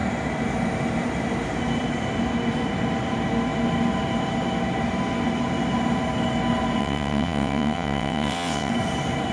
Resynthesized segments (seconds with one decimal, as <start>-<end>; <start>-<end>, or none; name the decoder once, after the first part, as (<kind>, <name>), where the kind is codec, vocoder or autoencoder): 6.8-8.7 (vocoder, WaveNeXt)